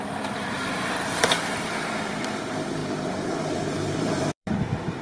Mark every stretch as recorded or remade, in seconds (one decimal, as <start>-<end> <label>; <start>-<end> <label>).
0.0-5.0 remade